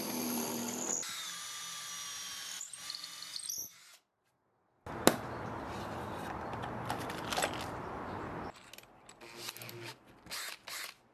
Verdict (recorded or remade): recorded